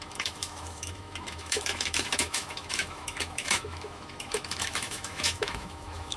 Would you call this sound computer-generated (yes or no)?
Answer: yes